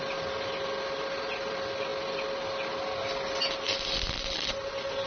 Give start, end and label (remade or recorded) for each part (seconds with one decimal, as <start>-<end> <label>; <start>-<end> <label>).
0.0-5.1 recorded